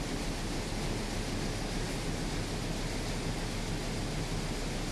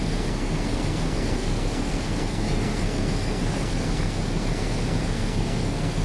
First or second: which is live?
first